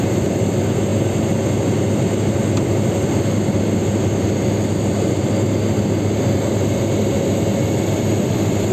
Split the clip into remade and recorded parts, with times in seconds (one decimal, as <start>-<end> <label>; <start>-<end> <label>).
0.0-8.7 recorded